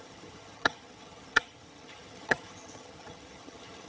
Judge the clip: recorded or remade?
remade